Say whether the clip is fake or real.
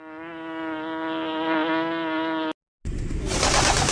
real